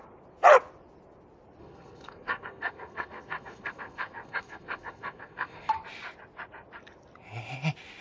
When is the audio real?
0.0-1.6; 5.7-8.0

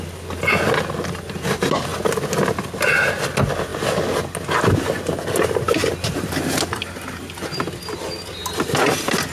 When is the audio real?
0.0-9.3

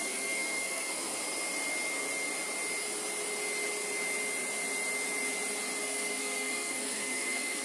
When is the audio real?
1.2-5.8